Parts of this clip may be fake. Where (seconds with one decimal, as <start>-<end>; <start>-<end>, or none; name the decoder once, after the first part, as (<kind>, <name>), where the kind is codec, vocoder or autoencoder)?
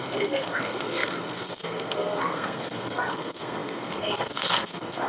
0.0-5.1 (codec, SNAC)